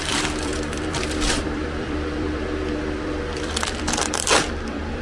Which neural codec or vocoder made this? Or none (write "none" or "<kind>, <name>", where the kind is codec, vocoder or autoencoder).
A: vocoder, BigVGAN v2